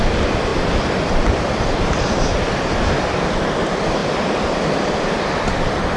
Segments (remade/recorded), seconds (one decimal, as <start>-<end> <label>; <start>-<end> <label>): 0.0-0.5 recorded; 0.5-3.4 remade; 3.4-4.0 recorded; 4.0-4.6 remade; 4.6-6.0 recorded